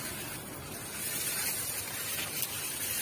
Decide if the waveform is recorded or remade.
recorded